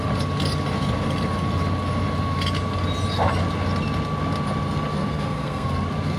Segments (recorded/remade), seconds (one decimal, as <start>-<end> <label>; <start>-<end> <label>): 0.0-5.0 recorded; 5.0-5.7 remade; 5.7-6.2 recorded